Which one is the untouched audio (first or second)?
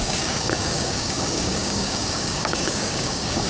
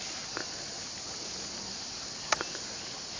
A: second